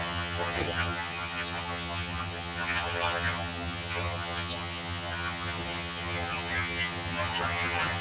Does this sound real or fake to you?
fake